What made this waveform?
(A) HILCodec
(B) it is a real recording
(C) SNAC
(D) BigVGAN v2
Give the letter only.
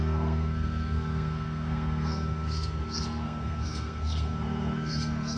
C